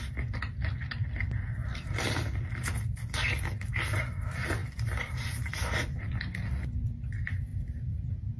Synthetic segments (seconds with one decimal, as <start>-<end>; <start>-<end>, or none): 1.6-2.1; 4.6-6.1